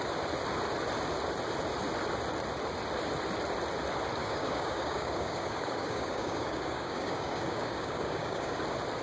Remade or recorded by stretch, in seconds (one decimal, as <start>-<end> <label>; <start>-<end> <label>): 0.0-4.2 recorded; 4.2-8.6 remade; 8.6-9.0 recorded